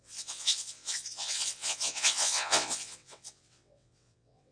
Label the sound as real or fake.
fake